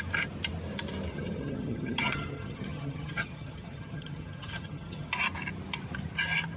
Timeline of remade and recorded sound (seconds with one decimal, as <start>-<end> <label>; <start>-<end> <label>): 0.0-1.1 recorded; 1.1-5.1 remade; 5.1-6.6 recorded